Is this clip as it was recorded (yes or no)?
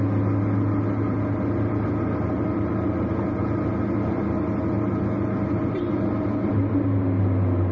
yes